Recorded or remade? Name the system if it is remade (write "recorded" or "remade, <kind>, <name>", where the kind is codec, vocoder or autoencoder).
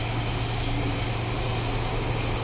recorded